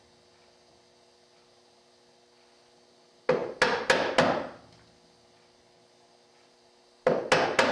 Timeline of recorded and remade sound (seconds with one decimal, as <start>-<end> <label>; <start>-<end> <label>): 0.0-7.7 recorded